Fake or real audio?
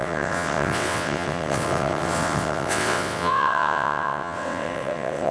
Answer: fake